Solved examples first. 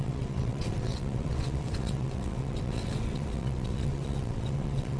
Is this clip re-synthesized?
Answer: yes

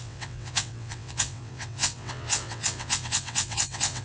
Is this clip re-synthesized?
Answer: yes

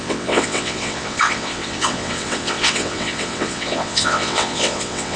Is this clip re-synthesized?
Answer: yes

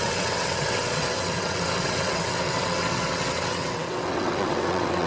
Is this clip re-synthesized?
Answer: yes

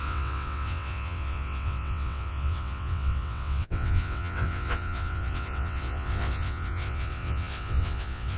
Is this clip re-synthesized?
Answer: yes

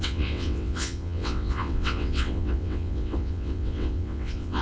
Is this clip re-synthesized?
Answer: yes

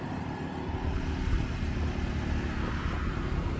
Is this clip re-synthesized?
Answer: no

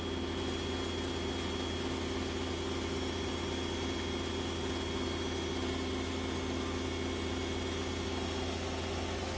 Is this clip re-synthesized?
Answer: no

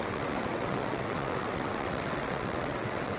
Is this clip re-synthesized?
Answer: yes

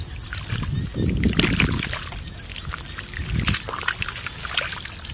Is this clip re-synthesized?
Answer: no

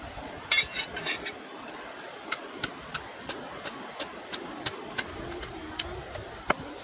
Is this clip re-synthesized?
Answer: no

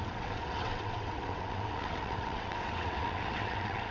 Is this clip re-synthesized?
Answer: yes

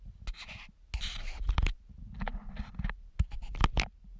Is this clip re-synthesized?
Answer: no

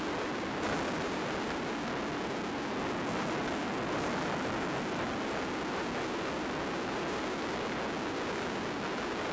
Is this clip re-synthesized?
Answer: no